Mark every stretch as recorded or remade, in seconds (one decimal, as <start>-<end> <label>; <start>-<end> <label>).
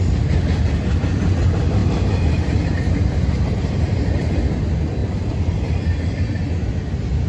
0.0-1.8 recorded; 1.8-4.4 remade; 4.4-7.3 recorded